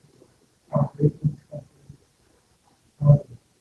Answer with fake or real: real